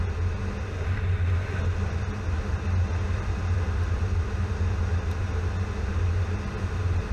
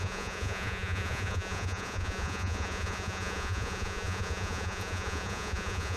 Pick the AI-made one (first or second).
second